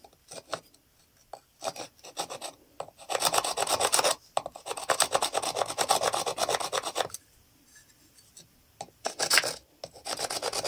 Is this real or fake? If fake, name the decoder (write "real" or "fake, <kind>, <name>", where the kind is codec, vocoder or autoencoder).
real